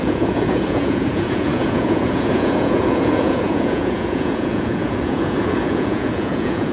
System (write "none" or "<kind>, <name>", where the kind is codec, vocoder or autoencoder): vocoder, Vocos